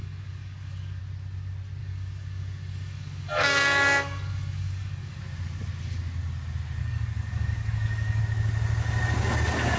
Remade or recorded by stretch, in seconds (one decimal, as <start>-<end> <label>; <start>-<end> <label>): 0.0-1.0 remade; 1.0-1.8 recorded; 1.8-5.2 remade; 5.2-6.8 recorded; 6.8-8.2 remade; 8.2-9.8 recorded